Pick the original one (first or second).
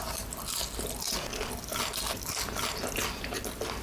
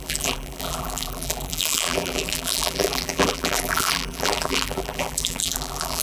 first